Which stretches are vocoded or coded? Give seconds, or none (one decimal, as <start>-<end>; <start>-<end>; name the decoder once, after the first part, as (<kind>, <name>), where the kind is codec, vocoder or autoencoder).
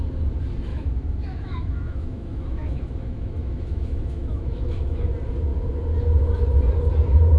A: 0.7-5.1 (autoencoder, DAC-VAE)